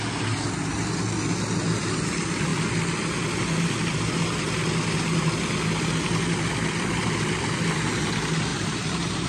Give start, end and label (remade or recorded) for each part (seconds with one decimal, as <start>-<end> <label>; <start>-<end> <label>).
0.0-8.5 recorded; 8.5-9.3 remade